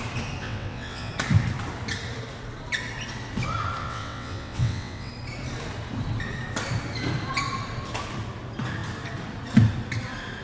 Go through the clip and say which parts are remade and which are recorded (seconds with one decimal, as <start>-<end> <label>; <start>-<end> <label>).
0.0-0.4 recorded; 0.4-1.1 remade; 1.1-3.8 recorded; 3.8-5.1 remade; 5.1-10.4 recorded